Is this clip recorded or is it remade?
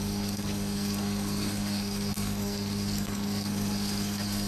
remade